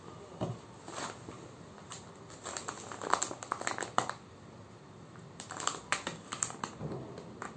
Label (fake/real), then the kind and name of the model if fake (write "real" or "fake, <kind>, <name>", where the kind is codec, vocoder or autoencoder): real